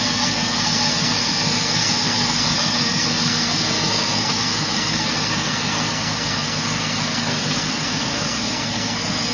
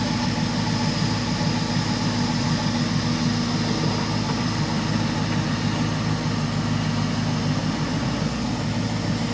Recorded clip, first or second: second